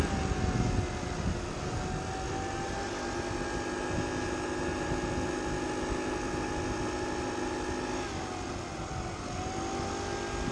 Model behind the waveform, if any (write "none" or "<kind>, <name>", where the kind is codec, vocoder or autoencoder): none